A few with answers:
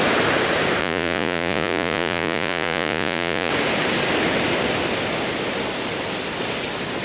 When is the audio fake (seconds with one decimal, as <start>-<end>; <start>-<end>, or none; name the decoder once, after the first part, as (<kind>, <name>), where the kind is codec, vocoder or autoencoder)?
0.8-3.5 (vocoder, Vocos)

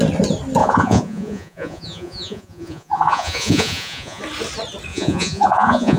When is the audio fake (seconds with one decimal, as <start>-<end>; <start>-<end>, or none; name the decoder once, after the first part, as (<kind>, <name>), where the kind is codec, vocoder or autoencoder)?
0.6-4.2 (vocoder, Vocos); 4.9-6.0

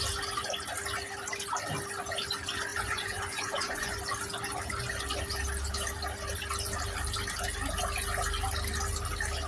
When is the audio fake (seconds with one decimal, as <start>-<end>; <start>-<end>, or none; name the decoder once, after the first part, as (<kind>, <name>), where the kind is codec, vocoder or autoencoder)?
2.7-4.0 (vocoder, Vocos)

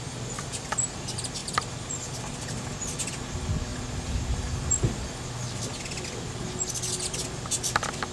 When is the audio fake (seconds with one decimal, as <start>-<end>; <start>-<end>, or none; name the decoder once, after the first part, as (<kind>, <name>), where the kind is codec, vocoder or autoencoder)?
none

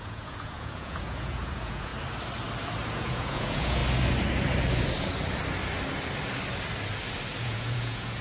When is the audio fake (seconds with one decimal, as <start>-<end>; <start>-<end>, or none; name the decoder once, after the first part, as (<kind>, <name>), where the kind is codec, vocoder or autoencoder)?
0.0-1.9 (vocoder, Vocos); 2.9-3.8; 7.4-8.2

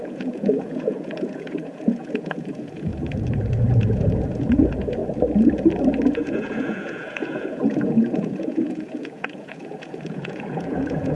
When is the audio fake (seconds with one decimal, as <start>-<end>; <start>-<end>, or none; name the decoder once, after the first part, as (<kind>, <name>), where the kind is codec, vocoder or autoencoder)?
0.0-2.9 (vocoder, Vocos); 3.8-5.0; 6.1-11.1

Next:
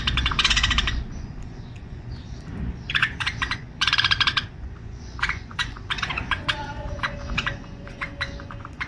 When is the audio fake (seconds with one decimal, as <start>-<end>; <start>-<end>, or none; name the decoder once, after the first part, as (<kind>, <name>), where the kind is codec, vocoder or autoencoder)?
0.0-8.9 (vocoder, Vocos)

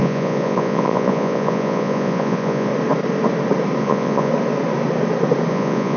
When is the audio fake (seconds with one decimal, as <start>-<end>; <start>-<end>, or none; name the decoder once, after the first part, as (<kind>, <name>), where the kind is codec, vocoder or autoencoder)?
0.0-2.7 (vocoder, Vocos); 3.8-4.3; 5.5-6.0